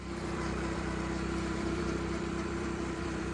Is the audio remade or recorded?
remade